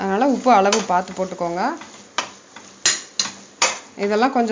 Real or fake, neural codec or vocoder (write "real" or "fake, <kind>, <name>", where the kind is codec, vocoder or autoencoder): real